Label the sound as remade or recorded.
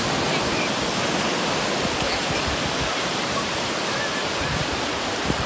recorded